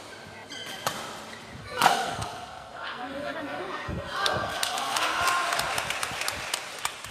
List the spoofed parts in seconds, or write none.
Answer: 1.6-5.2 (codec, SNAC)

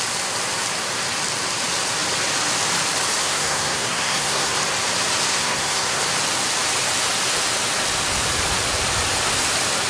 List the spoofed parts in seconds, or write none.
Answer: 3.2-4.5 (codec, SNAC); 5.3-6.0

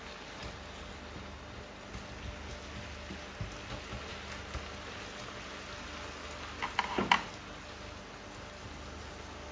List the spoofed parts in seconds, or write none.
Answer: none

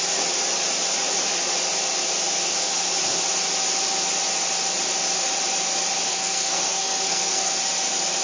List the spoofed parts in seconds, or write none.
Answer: 6.1-7.5 (codec, SNAC)

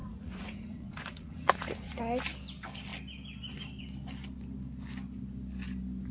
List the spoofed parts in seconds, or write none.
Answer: 0.0-2.0 (vocoder, Vocos)